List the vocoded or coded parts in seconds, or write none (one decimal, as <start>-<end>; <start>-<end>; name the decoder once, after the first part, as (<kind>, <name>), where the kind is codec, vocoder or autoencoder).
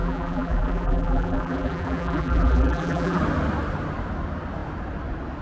0.0-3.2 (vocoder, BigVGAN v2)